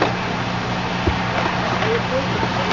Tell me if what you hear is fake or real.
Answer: real